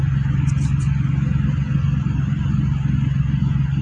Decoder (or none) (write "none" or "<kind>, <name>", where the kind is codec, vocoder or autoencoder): none